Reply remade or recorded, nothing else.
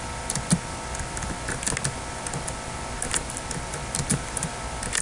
recorded